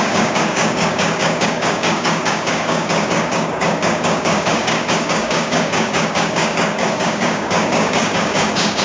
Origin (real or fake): fake